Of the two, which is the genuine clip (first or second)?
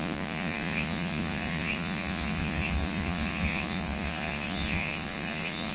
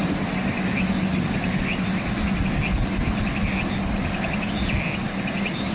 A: second